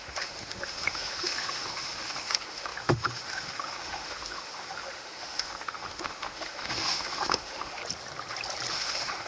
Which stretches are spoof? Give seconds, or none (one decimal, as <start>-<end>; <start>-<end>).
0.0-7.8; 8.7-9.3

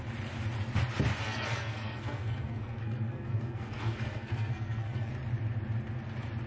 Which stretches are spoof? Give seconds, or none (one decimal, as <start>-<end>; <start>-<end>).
1.2-5.1

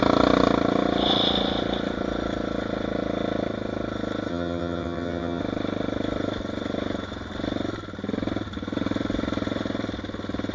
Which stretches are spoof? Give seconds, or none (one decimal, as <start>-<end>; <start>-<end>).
4.3-5.4

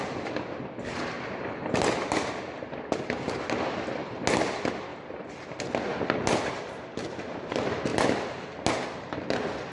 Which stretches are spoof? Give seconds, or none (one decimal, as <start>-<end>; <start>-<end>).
none

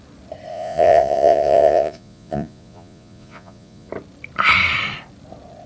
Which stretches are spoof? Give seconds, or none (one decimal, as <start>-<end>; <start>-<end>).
0.5-3.9

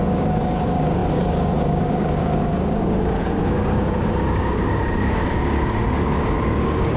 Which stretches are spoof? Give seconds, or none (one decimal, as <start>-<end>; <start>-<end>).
0.0-7.0